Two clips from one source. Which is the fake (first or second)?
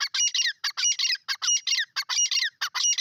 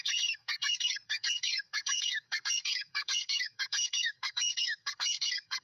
second